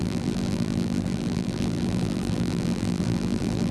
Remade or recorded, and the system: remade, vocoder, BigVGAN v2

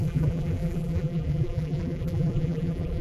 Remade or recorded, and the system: remade, vocoder, BigVGAN v2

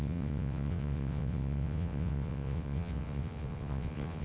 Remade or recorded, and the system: remade, vocoder, WaveNeXt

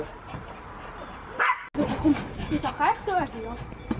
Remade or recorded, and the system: recorded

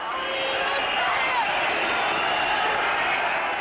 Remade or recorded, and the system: recorded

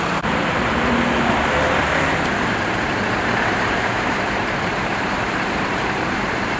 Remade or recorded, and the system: remade, vocoder, BigVGAN v2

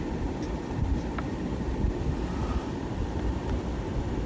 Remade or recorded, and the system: remade, vocoder, BigVGAN v2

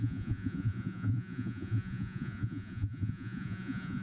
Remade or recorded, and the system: remade, vocoder, Vocos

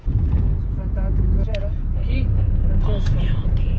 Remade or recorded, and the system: remade, vocoder, Vocos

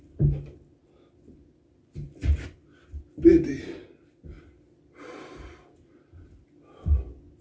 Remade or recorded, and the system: recorded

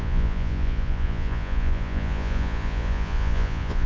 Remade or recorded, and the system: remade, vocoder, Vocos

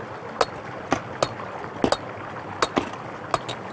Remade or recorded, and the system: recorded